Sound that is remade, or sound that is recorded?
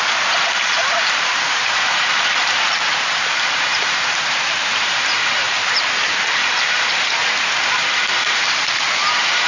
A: remade